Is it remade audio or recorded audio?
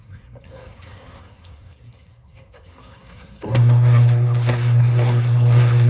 remade